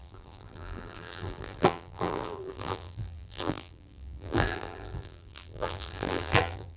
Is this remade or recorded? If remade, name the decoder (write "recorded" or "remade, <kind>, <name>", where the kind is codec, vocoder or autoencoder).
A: remade, vocoder, BigVGAN v2